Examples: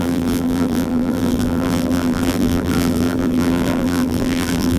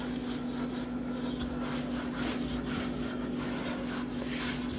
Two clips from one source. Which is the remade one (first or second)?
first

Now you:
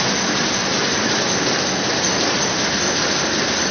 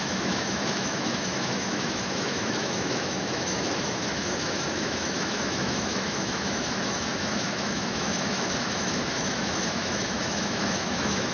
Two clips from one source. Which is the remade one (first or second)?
second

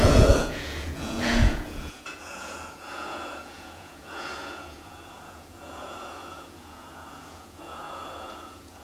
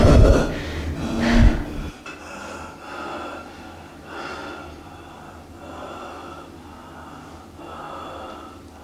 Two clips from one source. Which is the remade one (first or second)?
first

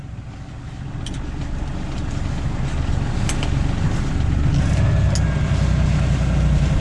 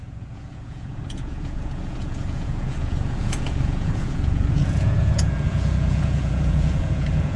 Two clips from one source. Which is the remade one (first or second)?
second